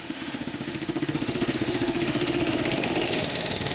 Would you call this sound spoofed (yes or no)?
yes